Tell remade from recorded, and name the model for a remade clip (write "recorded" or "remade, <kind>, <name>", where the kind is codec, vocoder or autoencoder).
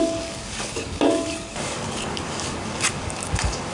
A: remade, codec, DAC